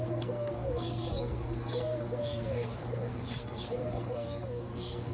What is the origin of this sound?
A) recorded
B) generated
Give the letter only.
B